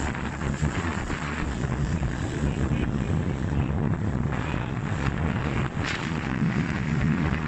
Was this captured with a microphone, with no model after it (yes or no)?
no